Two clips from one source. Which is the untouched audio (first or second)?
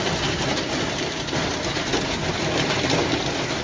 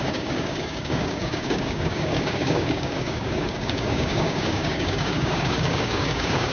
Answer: first